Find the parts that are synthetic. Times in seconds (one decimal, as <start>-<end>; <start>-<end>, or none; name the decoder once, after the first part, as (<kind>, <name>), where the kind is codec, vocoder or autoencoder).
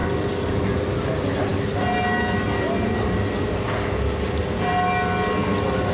0.0-0.7 (codec, DAC)